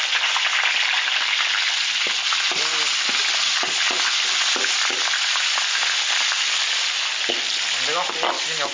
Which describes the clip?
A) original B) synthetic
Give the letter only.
A